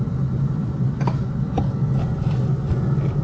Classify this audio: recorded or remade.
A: recorded